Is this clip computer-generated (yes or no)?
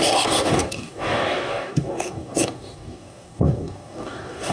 yes